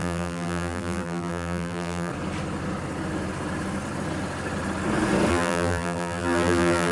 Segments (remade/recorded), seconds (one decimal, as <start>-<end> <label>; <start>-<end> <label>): 0.0-2.1 remade; 2.1-5.3 recorded; 5.3-6.9 remade